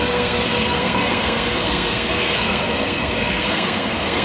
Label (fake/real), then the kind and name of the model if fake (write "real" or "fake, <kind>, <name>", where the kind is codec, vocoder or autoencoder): fake, codec, SNAC